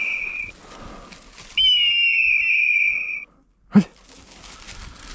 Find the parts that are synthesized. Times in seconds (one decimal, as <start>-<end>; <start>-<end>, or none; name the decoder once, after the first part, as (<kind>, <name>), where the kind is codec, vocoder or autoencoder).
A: none